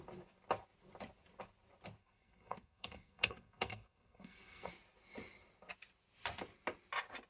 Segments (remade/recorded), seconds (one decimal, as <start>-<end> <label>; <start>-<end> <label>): 0.0-2.0 recorded; 2.0-4.7 remade; 4.7-7.3 recorded